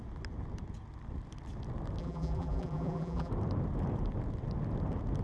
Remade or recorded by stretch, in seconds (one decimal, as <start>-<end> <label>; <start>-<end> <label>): 0.0-2.0 recorded; 2.0-3.3 remade; 3.3-5.2 recorded